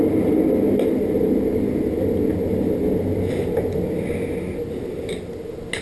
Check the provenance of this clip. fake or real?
real